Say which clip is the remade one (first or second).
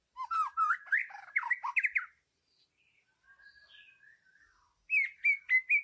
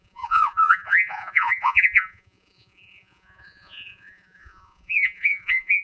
second